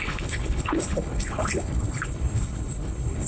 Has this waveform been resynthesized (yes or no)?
yes